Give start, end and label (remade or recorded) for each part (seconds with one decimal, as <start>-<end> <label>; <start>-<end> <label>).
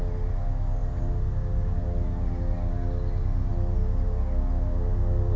0.0-5.4 recorded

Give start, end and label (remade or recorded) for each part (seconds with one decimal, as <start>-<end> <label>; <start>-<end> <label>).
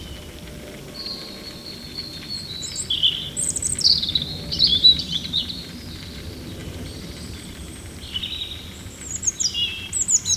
0.0-4.7 recorded; 4.7-5.7 remade; 5.7-6.6 recorded; 6.6-8.2 remade; 8.2-10.4 recorded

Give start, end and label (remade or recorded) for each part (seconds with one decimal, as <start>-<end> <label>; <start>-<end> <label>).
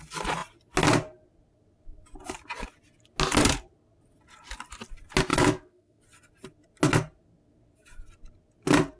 0.0-5.3 recorded; 5.3-6.0 remade; 6.0-9.0 recorded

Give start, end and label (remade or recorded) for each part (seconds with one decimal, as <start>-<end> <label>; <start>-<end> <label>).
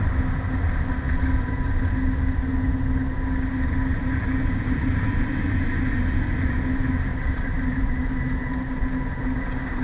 0.0-7.1 recorded; 7.1-8.1 remade; 8.1-9.8 recorded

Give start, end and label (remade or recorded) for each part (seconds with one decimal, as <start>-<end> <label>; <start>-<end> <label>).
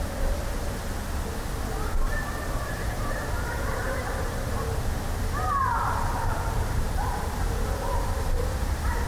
0.0-2.2 recorded; 2.2-4.5 remade; 4.5-5.6 recorded; 5.6-7.2 remade; 7.2-9.1 recorded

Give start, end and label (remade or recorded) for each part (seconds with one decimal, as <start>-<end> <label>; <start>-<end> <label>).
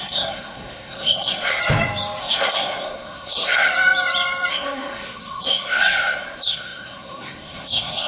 0.0-1.6 remade; 1.6-2.2 recorded; 2.2-3.7 remade; 3.7-4.5 recorded; 4.5-8.1 remade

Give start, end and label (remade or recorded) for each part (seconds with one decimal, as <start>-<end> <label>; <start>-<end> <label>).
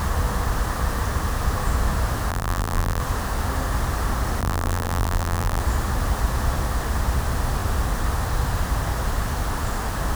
0.0-2.3 recorded; 2.3-3.0 remade; 3.0-4.4 recorded; 4.4-5.6 remade; 5.6-10.2 recorded